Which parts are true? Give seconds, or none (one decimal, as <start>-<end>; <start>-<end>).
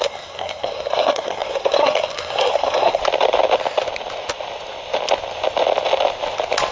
3.0-6.7